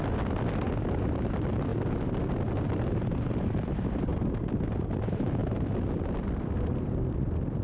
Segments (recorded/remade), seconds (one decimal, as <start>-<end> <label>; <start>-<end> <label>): 0.0-1.7 remade; 1.7-2.6 recorded; 2.6-4.1 remade; 4.1-5.0 recorded; 5.0-5.4 remade; 5.4-6.2 recorded; 6.2-7.6 remade